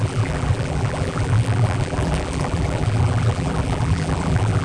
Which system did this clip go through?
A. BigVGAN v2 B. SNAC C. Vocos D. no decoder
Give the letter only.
A